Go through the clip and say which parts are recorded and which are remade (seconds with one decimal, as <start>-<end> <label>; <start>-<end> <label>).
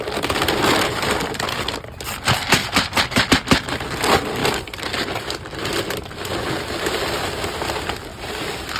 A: 0.0-2.6 recorded; 2.6-3.3 remade; 3.3-4.4 recorded; 4.4-7.3 remade; 7.3-8.1 recorded; 8.1-8.8 remade